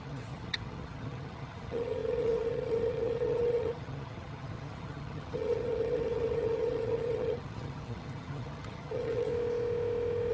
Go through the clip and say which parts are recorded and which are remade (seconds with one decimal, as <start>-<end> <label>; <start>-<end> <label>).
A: 0.0-9.3 remade; 9.3-10.3 recorded